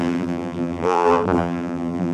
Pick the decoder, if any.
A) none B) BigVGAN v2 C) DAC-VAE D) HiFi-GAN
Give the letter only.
B